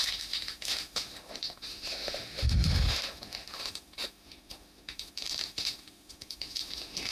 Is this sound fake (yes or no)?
yes